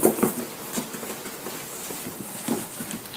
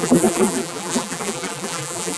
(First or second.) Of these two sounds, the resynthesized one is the second